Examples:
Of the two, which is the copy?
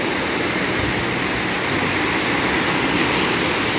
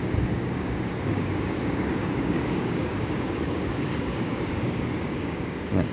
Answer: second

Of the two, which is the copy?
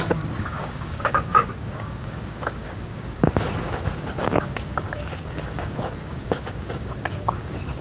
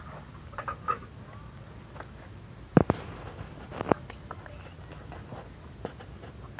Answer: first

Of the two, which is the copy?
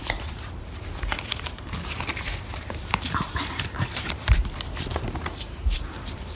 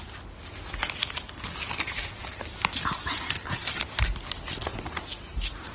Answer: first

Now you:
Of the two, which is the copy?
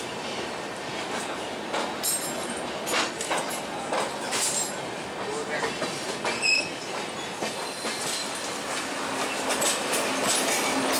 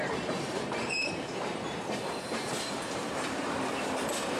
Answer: second